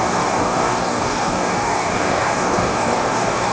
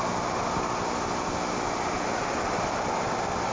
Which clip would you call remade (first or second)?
first